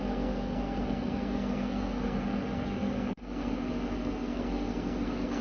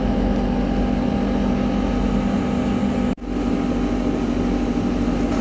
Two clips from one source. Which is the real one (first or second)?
second